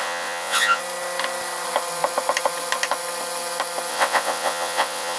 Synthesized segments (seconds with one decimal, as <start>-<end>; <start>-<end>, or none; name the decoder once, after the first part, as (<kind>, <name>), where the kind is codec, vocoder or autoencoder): 0.0-0.8 (vocoder, WaveNeXt); 3.9-5.2